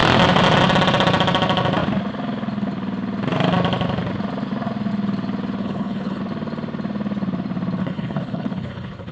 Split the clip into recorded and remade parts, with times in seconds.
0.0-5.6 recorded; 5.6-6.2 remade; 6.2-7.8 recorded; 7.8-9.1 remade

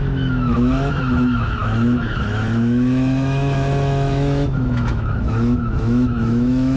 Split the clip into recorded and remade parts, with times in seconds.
0.0-6.8 remade

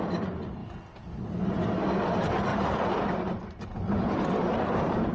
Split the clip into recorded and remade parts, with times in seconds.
0.0-2.5 recorded; 2.5-5.1 remade